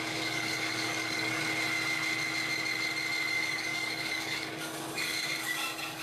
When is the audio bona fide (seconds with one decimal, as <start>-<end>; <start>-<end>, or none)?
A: 1.4-3.3